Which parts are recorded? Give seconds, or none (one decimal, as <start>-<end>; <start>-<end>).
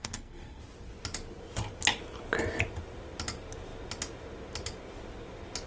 0.6-5.7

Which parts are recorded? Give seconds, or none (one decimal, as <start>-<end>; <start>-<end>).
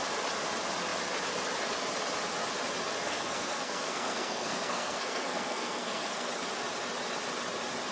0.0-3.0; 6.3-7.9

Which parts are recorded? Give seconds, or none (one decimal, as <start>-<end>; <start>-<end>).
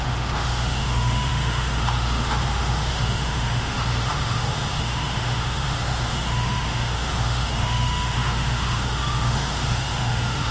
none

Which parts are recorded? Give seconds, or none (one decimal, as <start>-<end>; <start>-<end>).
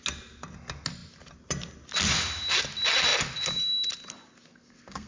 0.0-4.5